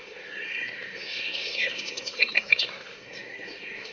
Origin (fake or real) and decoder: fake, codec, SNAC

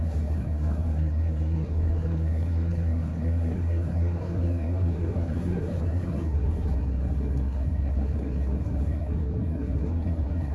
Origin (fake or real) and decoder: fake, codec, SNAC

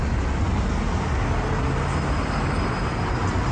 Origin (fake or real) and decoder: real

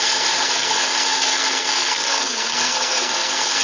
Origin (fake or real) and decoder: fake, codec, SNAC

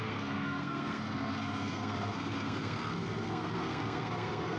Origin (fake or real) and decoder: fake, codec, SNAC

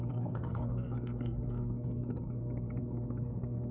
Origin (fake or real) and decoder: fake, codec, SNAC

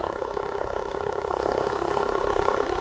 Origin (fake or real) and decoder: fake, codec, SNAC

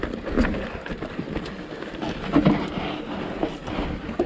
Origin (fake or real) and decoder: real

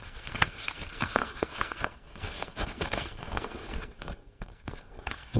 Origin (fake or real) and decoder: fake, codec, SNAC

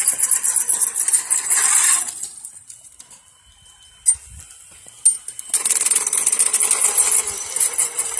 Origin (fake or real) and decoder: real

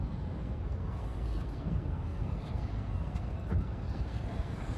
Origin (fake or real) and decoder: fake, codec, SNAC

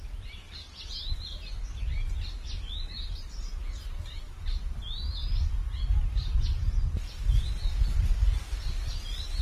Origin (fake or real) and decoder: real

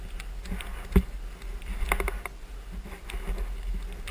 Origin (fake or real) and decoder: real